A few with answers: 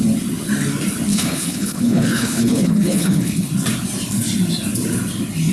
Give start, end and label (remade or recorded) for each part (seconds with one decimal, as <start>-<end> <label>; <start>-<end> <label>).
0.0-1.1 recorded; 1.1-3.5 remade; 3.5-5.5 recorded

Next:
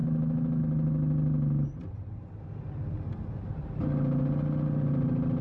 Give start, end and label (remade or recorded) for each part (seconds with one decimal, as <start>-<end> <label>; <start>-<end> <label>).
0.0-0.6 remade; 0.6-5.4 recorded

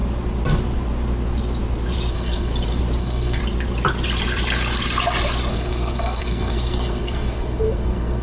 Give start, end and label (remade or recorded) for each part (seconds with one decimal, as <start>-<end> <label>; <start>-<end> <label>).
0.0-2.1 recorded; 2.1-2.5 remade; 2.5-3.0 recorded; 3.0-3.4 remade; 3.4-5.5 recorded; 5.5-8.2 remade

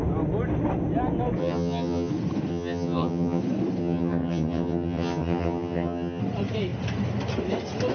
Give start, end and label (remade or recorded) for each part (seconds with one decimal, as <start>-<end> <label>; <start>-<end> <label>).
0.0-1.4 recorded; 1.4-2.1 remade; 2.1-2.5 recorded; 2.5-3.4 remade; 3.4-3.8 recorded; 3.8-6.2 remade; 6.2-7.9 recorded